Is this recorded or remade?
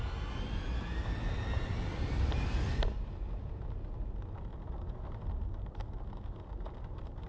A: remade